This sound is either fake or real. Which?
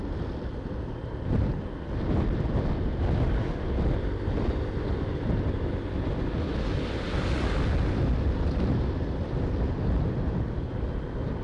real